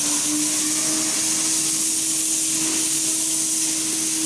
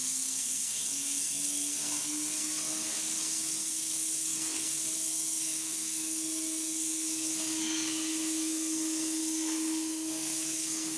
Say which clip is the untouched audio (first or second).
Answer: first